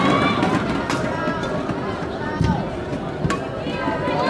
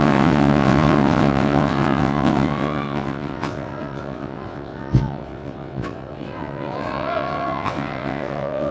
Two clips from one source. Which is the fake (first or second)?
second